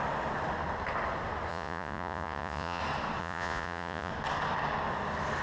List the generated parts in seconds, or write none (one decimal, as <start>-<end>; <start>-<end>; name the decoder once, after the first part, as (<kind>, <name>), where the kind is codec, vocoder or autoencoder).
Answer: 1.5-2.8 (vocoder, Vocos); 3.2-4.1